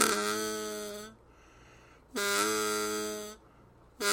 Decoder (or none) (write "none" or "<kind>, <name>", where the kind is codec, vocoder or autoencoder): none